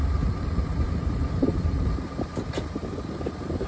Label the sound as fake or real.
fake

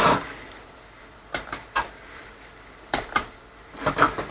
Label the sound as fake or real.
fake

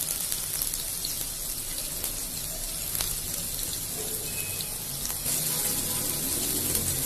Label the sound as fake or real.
real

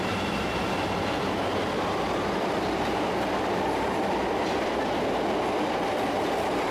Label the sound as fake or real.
fake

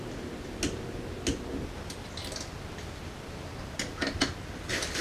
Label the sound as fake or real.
real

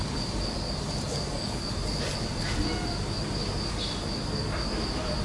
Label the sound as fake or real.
real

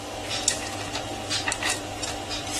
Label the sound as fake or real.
real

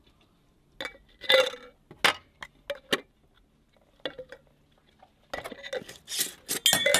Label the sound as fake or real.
real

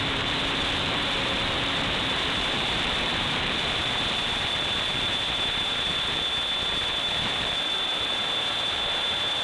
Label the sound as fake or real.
fake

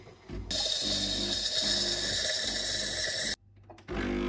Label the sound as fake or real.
real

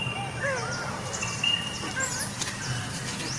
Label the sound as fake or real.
real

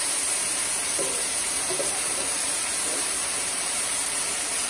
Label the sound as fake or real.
fake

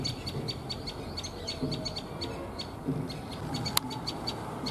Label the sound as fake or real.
real